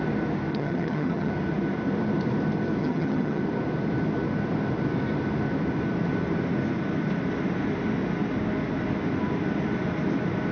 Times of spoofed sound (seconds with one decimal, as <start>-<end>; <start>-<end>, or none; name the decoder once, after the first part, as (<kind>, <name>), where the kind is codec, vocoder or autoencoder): 0.5-1.3 (vocoder, HiFi-GAN); 2.8-3.4